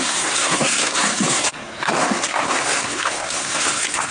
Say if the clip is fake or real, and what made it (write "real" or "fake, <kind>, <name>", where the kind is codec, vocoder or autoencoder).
fake, codec, SNAC